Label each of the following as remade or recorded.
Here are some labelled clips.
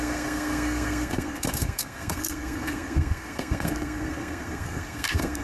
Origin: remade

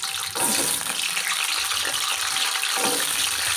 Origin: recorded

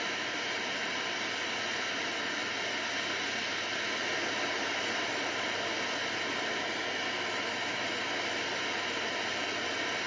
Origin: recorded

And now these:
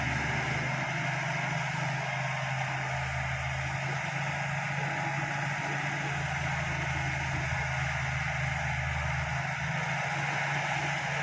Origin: recorded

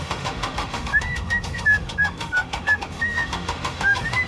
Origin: remade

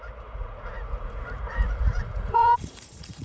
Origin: remade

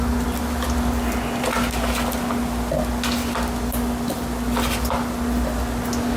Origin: recorded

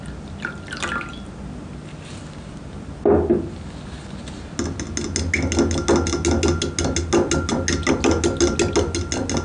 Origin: recorded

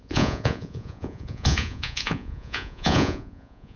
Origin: remade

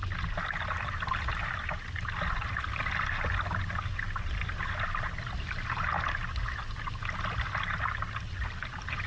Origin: recorded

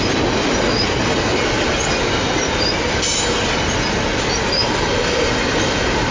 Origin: recorded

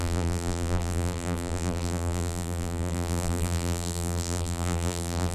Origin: remade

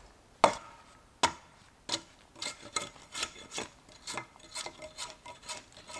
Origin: recorded